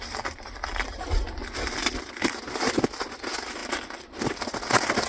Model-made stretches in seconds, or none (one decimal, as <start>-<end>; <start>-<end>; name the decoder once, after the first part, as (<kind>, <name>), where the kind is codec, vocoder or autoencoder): none